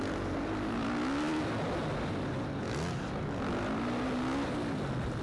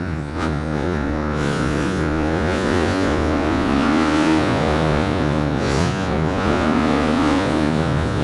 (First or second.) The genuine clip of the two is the first